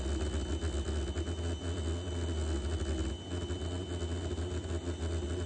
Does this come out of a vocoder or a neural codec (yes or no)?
no